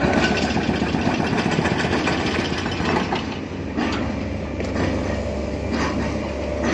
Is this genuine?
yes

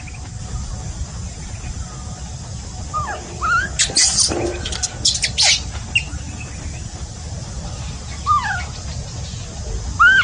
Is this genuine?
yes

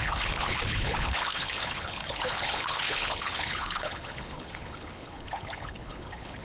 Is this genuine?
no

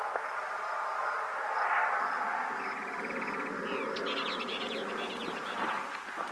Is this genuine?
yes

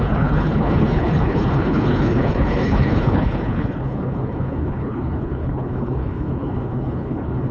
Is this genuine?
no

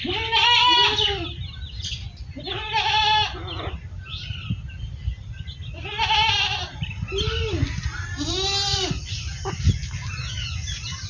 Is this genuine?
yes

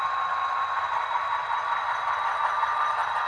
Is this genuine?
yes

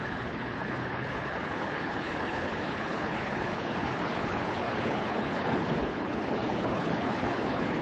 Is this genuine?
no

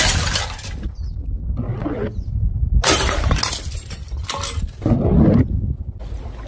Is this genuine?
yes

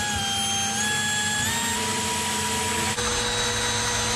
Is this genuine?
yes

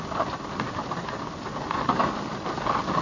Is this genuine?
yes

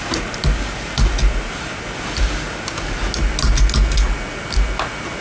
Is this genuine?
yes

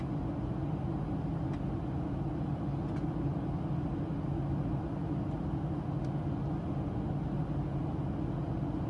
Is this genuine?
yes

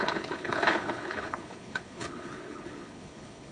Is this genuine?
no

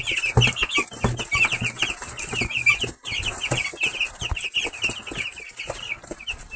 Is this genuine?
yes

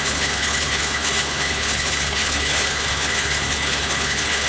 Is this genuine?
no